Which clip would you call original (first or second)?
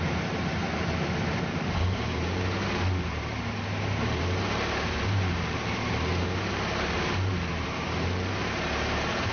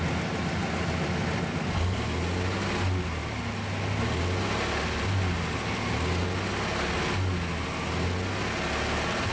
second